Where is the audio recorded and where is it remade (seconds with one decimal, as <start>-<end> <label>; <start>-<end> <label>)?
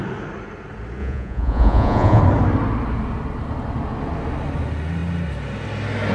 0.0-1.0 recorded; 1.0-2.2 remade; 2.2-6.1 recorded